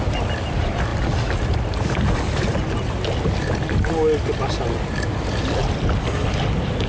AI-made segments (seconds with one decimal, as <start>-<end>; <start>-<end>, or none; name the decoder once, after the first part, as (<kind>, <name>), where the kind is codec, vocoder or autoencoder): none